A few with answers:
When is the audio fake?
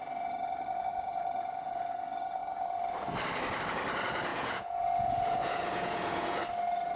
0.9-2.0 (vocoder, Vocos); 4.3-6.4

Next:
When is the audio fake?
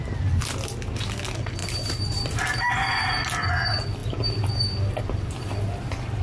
1.6-2.3 (vocoder, BigVGAN v2)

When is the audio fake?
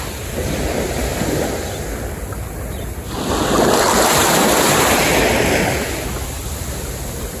none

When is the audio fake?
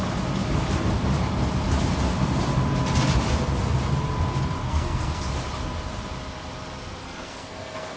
4.6-5.2 (codec, SNAC); 7.0-8.0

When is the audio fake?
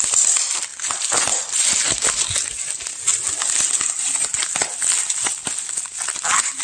0.7-1.4 (vocoder, BigVGAN v2)